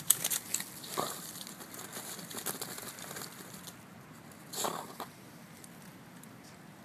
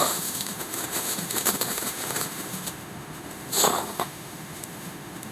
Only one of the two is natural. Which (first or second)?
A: first